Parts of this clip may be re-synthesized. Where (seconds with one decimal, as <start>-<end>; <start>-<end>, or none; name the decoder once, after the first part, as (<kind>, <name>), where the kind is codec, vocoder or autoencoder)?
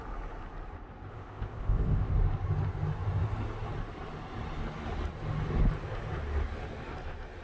1.1-2.1 (codec, ZipCodec)